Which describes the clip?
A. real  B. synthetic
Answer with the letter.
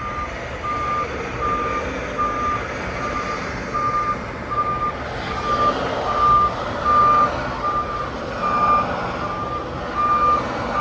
A